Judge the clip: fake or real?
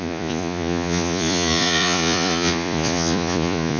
fake